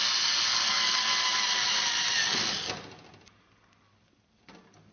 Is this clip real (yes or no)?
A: yes